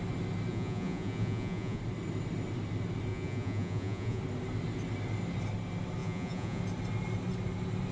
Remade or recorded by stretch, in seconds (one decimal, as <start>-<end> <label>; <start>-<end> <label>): 0.0-0.5 recorded; 0.5-1.8 remade; 1.8-3.1 recorded; 3.1-4.2 remade; 4.2-6.0 recorded; 6.0-6.6 remade; 6.6-7.9 recorded